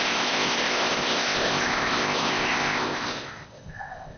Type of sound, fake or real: fake